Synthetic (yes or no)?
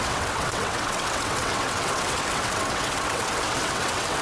yes